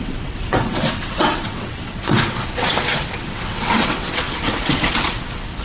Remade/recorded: remade